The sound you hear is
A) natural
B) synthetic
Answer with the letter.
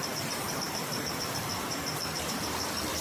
B